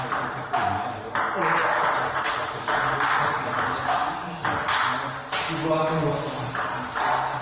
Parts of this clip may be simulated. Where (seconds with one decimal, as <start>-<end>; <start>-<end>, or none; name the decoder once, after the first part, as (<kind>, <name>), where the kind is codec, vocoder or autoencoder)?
none